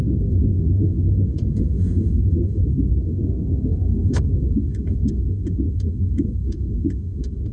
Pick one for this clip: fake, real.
fake